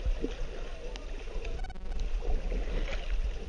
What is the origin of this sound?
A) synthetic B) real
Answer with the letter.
B